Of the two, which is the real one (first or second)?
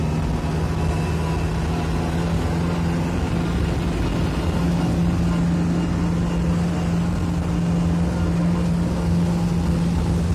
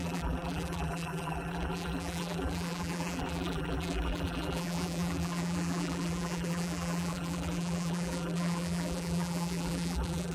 first